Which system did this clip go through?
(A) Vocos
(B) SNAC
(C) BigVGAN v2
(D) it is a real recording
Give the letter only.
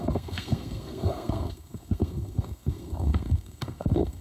B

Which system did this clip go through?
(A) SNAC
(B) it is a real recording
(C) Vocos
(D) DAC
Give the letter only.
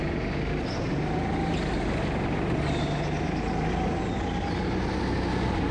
B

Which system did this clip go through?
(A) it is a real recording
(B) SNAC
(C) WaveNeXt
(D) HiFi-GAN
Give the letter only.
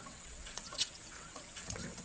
C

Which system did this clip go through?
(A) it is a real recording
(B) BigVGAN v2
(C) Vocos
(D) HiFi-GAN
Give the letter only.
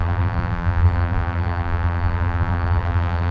B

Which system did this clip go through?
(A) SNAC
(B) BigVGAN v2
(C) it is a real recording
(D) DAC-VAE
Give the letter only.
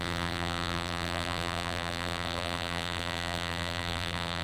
B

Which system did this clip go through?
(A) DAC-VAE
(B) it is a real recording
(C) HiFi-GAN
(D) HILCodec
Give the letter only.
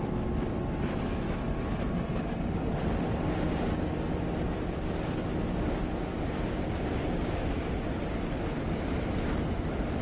B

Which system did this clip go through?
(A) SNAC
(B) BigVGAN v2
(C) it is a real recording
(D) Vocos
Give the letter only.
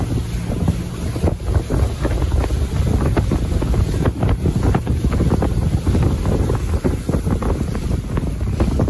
C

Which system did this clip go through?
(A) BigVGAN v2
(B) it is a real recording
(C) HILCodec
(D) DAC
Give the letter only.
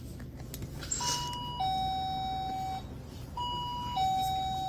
B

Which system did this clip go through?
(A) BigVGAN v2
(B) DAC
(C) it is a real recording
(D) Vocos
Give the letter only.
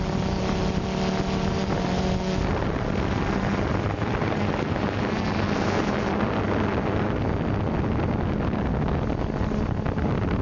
C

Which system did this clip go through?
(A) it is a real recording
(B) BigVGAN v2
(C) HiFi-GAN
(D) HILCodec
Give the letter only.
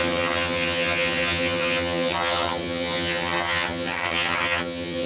C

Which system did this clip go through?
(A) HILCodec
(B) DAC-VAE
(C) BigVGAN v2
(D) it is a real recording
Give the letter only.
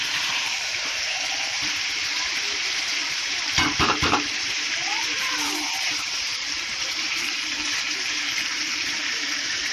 C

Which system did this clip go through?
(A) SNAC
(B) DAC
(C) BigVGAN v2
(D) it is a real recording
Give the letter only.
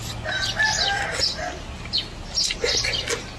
D